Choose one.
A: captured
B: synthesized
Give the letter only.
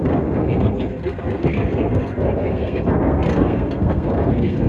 B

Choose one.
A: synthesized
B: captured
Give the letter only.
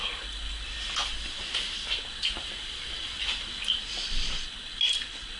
B